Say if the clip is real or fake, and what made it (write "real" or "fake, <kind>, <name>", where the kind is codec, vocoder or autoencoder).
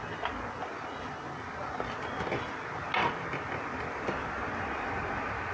real